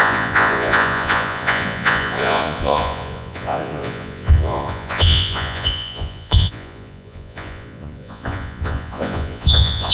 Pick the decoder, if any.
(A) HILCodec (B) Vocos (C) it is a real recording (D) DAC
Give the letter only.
B